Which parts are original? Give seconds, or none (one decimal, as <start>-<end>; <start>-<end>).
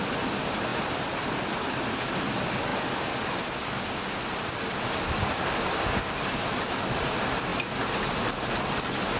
0.0-9.2